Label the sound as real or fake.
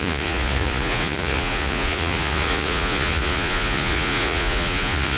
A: fake